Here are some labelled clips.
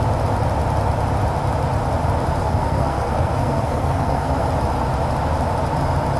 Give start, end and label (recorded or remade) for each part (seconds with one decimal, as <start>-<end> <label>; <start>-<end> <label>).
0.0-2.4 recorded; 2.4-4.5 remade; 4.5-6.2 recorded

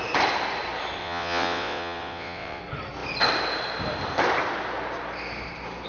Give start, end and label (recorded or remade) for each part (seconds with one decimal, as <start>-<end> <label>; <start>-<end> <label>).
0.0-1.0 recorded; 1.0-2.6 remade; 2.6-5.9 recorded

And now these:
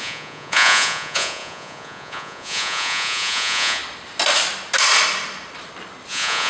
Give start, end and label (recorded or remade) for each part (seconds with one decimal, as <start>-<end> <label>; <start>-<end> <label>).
0.0-3.8 remade; 3.8-6.1 recorded; 6.1-6.5 remade

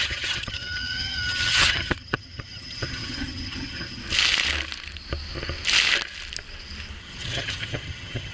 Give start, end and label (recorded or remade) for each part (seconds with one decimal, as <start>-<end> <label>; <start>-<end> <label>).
0.0-4.0 remade; 4.0-7.0 recorded; 7.0-8.3 remade

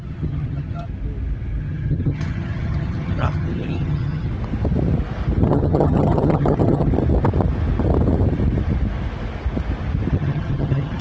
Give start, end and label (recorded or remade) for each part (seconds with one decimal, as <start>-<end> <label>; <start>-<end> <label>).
0.0-0.9 remade; 0.9-1.6 recorded; 1.6-4.3 remade; 4.3-5.4 recorded; 5.4-6.9 remade; 6.9-10.1 recorded; 10.1-11.0 remade

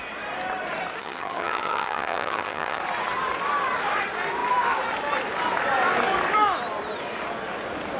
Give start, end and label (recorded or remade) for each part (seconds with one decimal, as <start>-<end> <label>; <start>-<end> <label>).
0.0-1.0 recorded; 1.0-2.8 remade; 2.8-8.0 recorded